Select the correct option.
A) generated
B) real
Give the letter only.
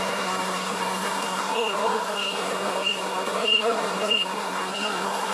A